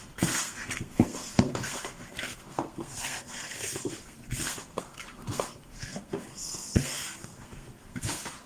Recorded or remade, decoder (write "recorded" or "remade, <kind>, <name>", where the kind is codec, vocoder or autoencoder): remade, codec, SNAC